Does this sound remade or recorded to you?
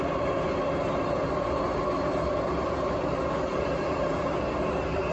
recorded